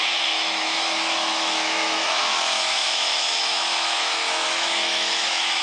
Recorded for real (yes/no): no